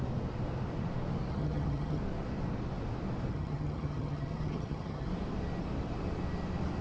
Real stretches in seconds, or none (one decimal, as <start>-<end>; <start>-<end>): 0.0-1.3; 2.0-3.3; 5.1-6.8

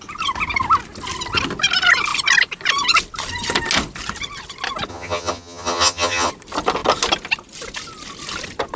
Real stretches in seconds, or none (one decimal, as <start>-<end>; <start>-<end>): 0.0-4.9; 6.3-8.8

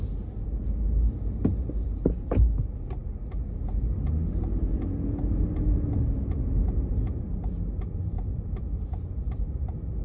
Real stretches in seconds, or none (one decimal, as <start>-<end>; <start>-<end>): 0.0-10.0

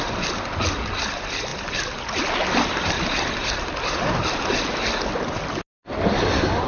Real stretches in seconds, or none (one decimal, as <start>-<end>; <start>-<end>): 0.0-6.7